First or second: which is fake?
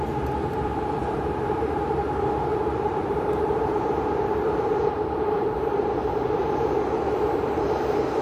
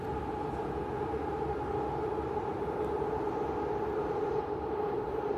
first